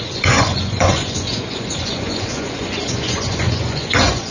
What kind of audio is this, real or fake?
fake